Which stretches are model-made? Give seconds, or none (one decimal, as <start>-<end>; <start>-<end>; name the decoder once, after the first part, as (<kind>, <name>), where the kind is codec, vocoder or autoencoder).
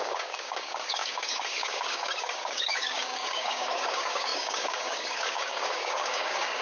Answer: 0.0-6.6 (codec, DAC)